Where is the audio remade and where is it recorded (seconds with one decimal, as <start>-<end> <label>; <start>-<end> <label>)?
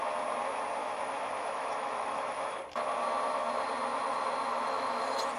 0.0-0.8 recorded; 0.8-2.6 remade; 2.6-4.5 recorded; 4.5-5.0 remade; 5.0-5.4 recorded